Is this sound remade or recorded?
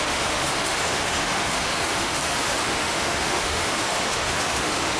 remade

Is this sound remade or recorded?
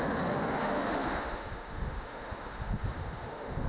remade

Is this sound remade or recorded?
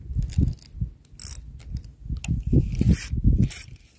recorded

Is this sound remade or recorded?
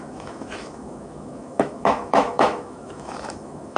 remade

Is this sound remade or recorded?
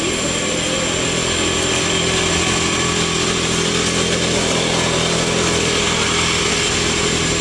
recorded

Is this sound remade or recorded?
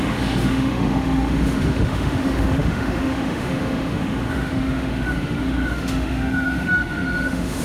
remade